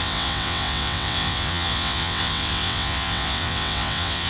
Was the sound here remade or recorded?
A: remade